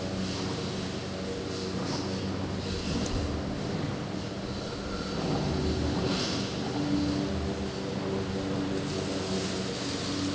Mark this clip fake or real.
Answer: real